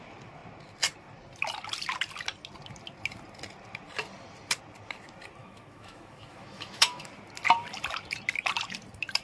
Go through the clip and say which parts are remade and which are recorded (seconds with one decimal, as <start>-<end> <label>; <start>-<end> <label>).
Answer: 0.0-5.4 recorded; 5.4-7.1 remade; 7.1-9.2 recorded